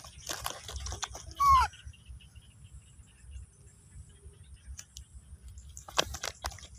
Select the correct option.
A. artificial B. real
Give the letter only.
B